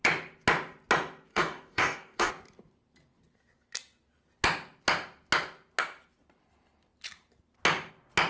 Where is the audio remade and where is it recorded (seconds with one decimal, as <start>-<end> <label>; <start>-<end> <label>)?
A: 0.0-1.3 recorded; 1.3-2.3 remade; 2.3-8.3 recorded